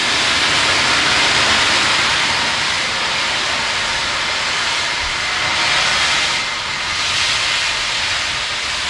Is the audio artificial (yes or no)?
no